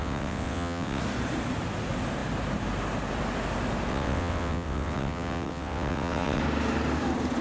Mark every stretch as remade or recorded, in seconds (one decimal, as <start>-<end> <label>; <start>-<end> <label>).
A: 0.0-1.0 remade; 1.0-3.9 recorded; 3.9-6.4 remade; 6.4-7.4 recorded